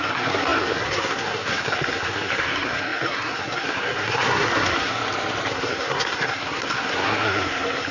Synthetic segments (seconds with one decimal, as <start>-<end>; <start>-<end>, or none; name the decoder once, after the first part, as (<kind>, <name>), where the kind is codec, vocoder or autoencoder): 0.0-5.0 (codec, SNAC); 5.5-7.9

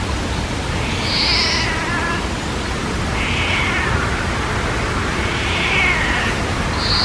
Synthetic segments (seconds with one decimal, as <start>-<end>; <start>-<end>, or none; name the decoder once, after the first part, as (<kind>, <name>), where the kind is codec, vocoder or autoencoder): none

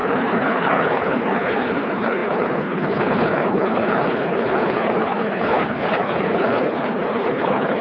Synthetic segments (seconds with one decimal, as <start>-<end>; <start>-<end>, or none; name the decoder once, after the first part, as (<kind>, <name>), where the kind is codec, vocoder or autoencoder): 0.0-7.8 (codec, HILCodec)